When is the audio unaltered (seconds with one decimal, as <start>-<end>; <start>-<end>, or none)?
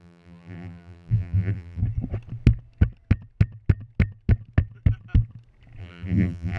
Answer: 1.8-5.8